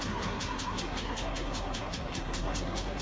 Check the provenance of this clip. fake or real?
fake